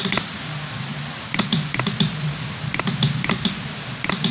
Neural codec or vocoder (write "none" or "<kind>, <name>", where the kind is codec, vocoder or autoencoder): none